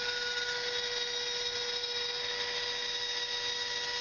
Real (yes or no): yes